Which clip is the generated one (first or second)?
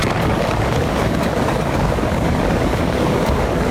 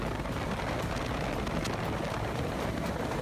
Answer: first